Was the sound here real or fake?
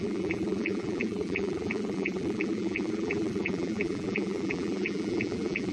fake